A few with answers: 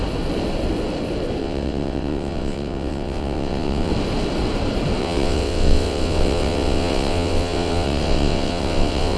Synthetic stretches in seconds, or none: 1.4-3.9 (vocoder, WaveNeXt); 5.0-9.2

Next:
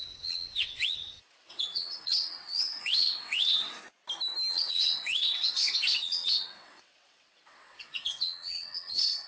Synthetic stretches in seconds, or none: 0.0-3.8 (vocoder, WaveNeXt); 4.5-9.3

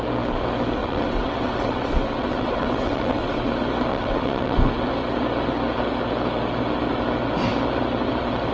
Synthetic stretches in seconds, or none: 0.8-3.5 (vocoder, WaveNeXt); 3.9-4.7